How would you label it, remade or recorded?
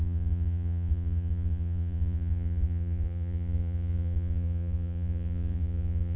remade